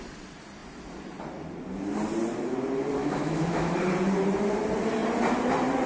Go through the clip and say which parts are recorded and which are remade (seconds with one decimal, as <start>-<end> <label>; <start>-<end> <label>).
0.0-3.0 recorded; 3.0-3.7 remade; 3.7-5.9 recorded

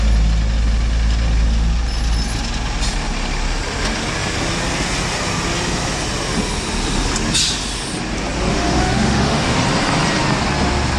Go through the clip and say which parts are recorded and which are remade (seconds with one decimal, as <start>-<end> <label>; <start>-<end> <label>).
0.0-8.5 recorded; 8.5-9.6 remade; 9.6-11.0 recorded